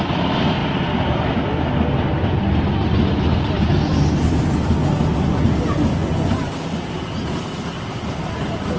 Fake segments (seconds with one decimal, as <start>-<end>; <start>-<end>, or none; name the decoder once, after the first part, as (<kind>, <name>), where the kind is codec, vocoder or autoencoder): 6.0-6.5 (vocoder, Vocos)